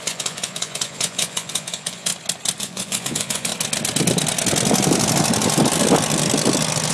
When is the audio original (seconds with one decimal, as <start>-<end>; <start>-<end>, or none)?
2.1-2.6; 3.5-6.9